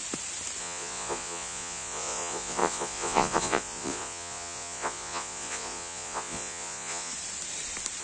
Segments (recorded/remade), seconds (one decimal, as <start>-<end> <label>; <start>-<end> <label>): 0.0-0.6 recorded; 0.6-7.1 remade; 7.1-8.0 recorded